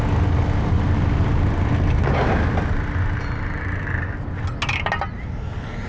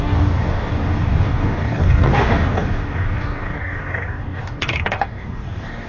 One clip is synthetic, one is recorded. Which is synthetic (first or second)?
second